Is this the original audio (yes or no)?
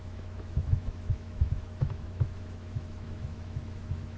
no